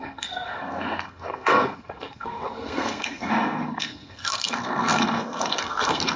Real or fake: fake